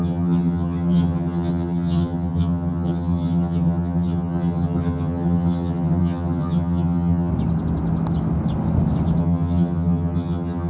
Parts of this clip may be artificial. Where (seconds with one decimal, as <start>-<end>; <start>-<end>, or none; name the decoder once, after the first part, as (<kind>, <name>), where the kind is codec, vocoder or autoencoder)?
0.0-7.3 (vocoder, HiFi-GAN); 9.2-10.7